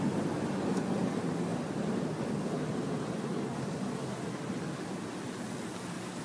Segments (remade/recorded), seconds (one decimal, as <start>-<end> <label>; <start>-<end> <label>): 0.0-6.2 recorded